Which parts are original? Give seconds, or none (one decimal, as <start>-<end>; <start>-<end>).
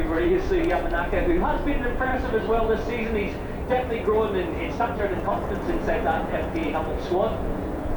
2.1-5.0